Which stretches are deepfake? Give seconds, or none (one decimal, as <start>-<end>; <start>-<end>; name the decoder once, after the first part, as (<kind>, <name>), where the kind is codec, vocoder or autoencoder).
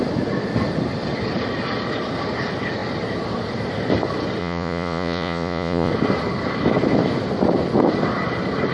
4.4-5.9 (vocoder, Vocos)